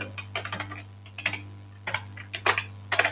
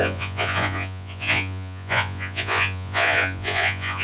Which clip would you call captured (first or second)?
first